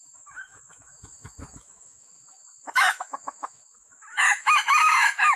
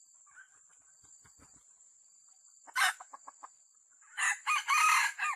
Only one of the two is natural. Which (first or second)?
second